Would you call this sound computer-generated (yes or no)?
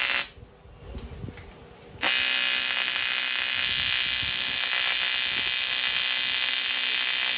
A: no